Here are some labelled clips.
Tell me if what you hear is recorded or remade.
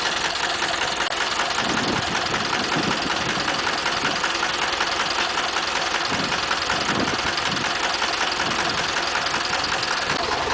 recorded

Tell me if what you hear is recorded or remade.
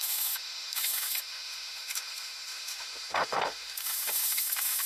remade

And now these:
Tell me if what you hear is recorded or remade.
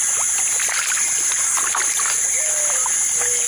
recorded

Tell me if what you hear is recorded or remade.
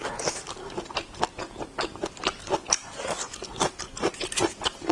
recorded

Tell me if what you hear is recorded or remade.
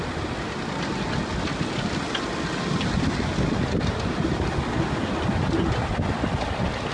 recorded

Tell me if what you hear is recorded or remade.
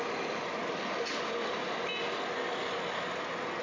recorded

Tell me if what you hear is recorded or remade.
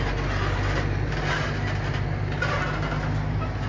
recorded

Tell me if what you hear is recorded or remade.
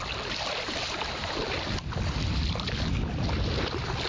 recorded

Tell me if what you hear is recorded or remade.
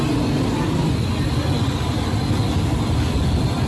recorded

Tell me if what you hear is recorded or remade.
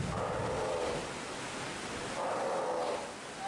recorded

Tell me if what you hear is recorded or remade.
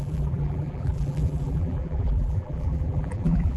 remade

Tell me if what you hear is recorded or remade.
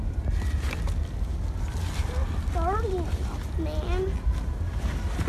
recorded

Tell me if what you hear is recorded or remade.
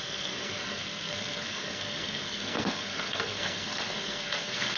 remade